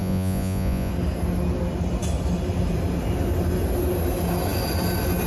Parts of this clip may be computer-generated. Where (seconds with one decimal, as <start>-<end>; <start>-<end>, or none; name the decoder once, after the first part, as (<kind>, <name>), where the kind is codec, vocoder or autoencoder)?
0.0-0.9 (vocoder, Vocos)